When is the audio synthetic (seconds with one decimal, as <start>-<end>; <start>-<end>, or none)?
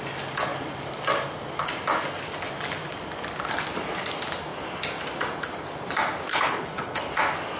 6.3-7.1